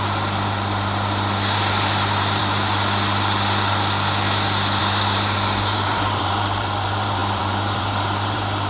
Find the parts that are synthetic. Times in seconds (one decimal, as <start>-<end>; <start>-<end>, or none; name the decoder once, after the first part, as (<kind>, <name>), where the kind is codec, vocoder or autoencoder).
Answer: 0.0-2.4 (vocoder, BigVGAN v2); 4.8-8.7